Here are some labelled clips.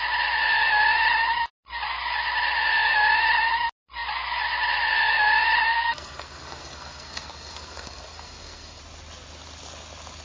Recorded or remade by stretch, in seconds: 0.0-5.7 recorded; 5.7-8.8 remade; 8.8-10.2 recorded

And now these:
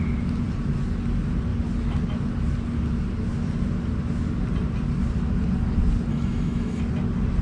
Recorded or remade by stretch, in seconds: 0.0-6.1 recorded; 6.1-6.8 remade; 6.8-7.4 recorded

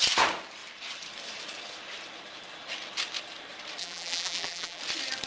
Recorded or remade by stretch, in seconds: 0.0-3.8 recorded; 3.8-4.8 remade; 4.8-5.3 recorded

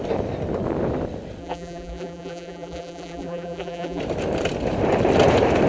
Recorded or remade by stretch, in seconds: 0.0-1.4 recorded; 1.4-4.0 remade; 4.0-5.7 recorded

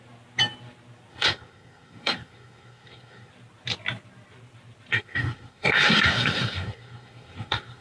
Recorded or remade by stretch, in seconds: 0.0-1.1 recorded; 1.1-3.3 remade; 3.3-4.9 recorded; 4.9-7.8 remade

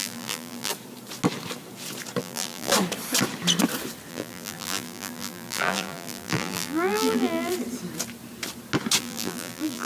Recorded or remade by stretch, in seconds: 0.0-0.7 remade; 0.7-2.2 recorded; 2.2-2.7 remade; 2.7-4.1 recorded; 4.1-7.5 remade; 7.5-9.0 recorded; 9.0-9.8 remade